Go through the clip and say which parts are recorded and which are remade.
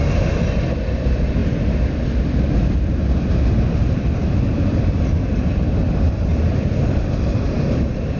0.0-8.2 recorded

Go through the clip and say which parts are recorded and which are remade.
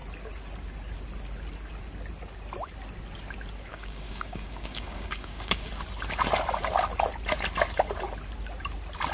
0.0-3.7 recorded; 3.7-5.7 remade; 5.7-9.1 recorded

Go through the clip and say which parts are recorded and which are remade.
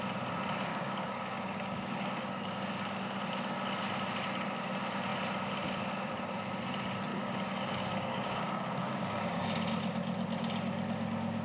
0.0-0.7 recorded; 0.7-3.0 remade; 3.0-7.1 recorded; 7.1-9.4 remade; 9.4-11.4 recorded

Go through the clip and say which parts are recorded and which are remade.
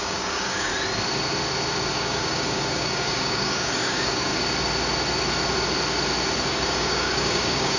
0.0-0.7 remade; 0.7-1.9 recorded; 1.9-4.3 remade; 4.3-6.5 recorded; 6.5-7.8 remade